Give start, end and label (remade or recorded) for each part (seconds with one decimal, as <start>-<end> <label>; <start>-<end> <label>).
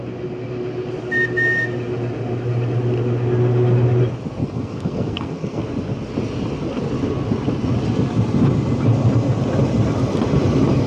0.0-4.4 recorded; 4.4-5.6 remade; 5.6-10.9 recorded